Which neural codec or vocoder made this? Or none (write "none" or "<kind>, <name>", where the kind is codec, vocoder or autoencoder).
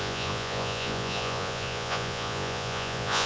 vocoder, Vocos